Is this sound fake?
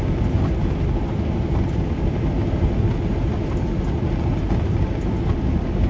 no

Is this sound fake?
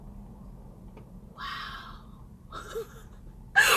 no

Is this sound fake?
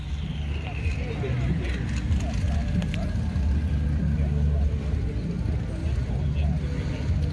no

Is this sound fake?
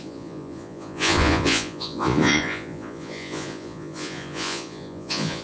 yes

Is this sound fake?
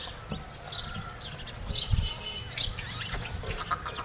no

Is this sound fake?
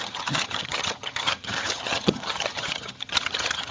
yes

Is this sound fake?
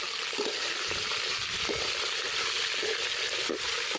no